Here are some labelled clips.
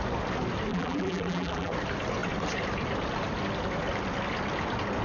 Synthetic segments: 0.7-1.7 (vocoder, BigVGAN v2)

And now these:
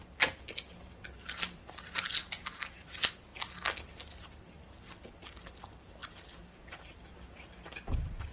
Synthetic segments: 0.0-2.9 (vocoder, BigVGAN v2); 3.3-4.6; 6.0-7.1